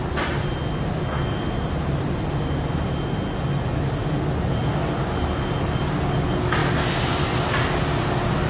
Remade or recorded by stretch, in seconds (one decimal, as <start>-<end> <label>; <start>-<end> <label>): 0.0-8.5 recorded